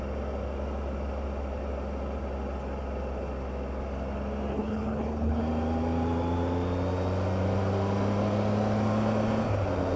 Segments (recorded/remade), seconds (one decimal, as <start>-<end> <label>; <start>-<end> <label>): 0.0-4.5 recorded; 4.5-5.4 remade; 5.4-10.0 recorded